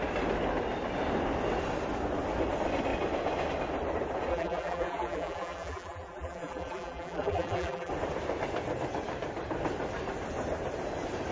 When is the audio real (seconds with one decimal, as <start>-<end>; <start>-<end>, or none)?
0.0-4.3; 7.9-11.3